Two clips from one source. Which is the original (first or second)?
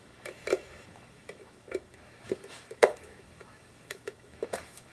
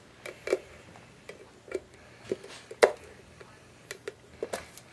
second